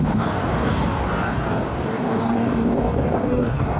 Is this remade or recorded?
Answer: remade